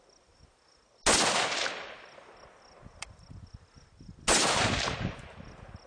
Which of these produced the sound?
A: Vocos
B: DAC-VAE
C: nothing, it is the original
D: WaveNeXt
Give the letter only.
C